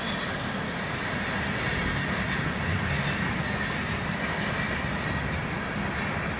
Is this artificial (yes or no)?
no